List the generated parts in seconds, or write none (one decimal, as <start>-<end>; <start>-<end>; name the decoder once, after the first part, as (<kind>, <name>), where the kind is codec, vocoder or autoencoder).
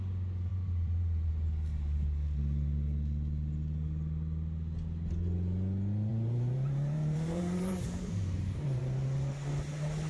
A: 0.5-1.3 (vocoder, BigVGAN v2); 6.1-8.8